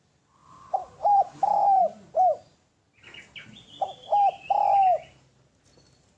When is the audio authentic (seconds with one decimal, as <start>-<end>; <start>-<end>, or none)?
0.0-0.4; 1.8-6.2